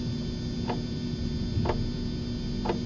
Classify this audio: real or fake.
real